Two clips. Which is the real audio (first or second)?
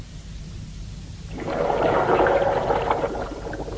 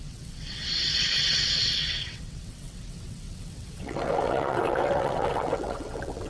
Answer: first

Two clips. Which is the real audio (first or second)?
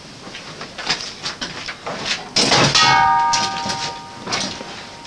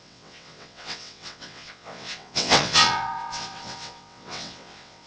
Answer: first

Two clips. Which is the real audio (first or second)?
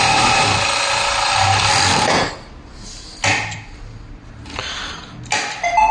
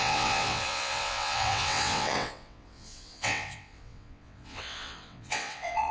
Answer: first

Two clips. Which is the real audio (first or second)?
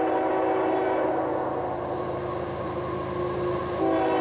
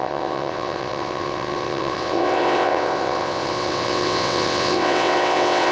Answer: first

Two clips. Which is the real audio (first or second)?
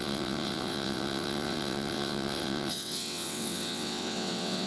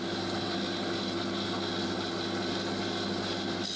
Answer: second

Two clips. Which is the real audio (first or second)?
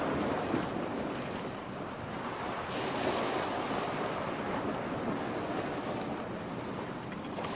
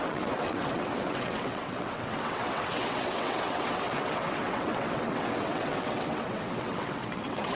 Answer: first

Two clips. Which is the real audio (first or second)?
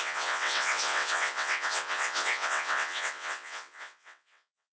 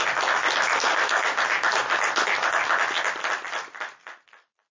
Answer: second